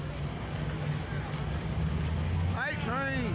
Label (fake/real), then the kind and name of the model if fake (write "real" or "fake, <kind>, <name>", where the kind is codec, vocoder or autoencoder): real